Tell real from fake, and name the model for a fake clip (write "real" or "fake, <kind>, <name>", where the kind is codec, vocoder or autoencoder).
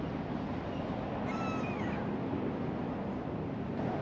real